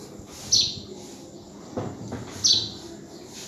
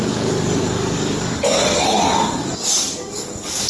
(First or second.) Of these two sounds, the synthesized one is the second